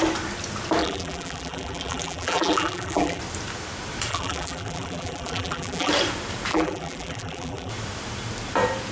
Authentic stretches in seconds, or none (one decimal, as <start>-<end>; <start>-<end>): 0.0-0.8; 3.2-4.1; 5.9-6.5; 7.7-8.9